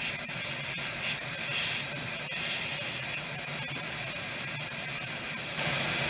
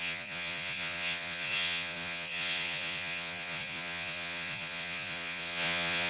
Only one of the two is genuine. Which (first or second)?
first